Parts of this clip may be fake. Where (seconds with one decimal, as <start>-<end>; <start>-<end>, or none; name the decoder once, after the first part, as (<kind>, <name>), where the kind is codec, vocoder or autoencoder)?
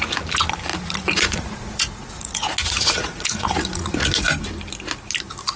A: 0.7-4.1 (vocoder, Vocos)